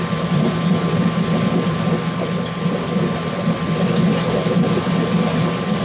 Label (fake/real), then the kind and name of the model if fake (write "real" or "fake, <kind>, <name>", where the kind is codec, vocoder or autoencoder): fake, vocoder, BigVGAN v2